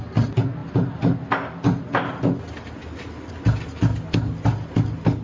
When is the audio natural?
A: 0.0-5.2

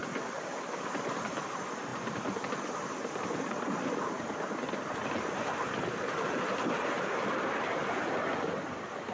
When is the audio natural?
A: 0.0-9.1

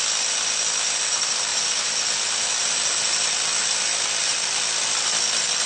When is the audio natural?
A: 0.0-5.7

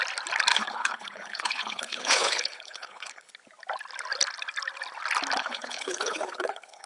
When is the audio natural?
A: 0.0-0.5; 3.3-5.4

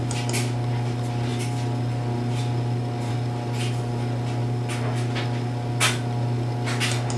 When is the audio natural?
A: 0.0-7.2